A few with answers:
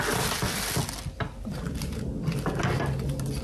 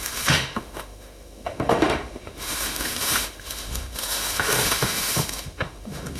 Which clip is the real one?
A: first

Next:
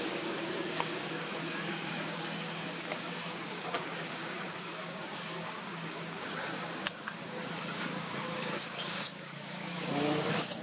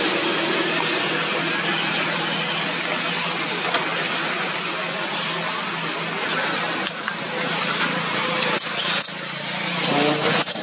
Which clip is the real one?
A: second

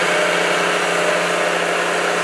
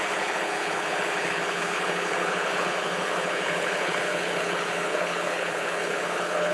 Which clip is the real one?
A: first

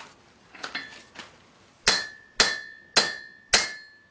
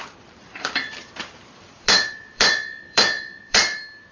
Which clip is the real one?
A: first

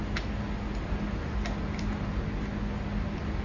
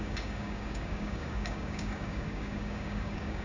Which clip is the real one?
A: first